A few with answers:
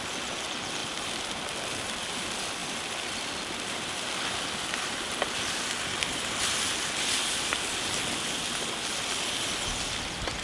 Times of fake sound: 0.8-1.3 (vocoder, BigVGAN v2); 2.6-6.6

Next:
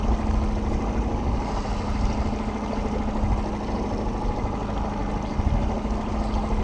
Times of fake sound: none

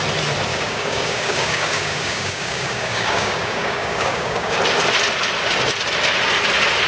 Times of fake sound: 0.5-4.6 (codec, DAC)

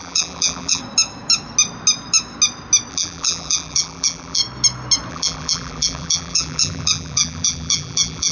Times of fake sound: 0.0-0.8 (vocoder, BigVGAN v2); 2.9-4.4; 5.1-8.3

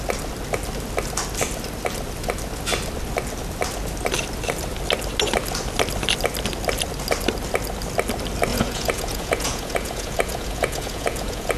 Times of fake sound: 8.5-11.6 (vocoder, Vocos)

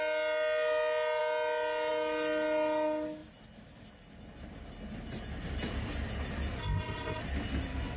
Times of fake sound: 6.6-7.2 (codec, ZipCodec)